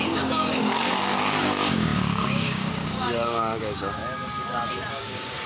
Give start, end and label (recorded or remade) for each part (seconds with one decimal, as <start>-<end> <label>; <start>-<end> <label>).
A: 0.0-4.0 remade; 4.0-4.9 recorded; 4.9-5.5 remade